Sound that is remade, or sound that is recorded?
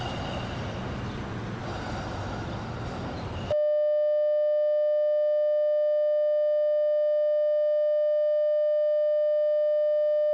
recorded